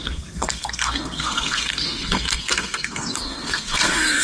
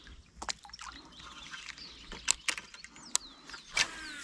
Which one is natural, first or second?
second